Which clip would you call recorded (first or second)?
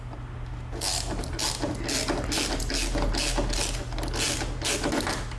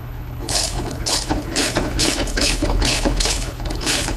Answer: first